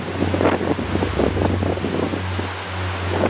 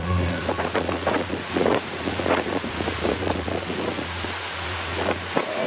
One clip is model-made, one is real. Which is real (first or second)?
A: first